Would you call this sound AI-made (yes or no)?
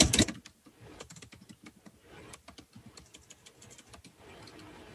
no